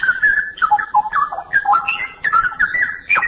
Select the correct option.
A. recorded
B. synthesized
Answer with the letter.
B